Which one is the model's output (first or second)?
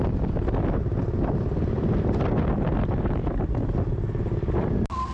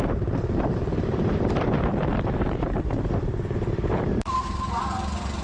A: second